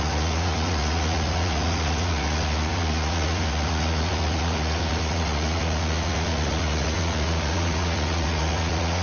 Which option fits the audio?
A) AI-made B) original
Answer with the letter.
A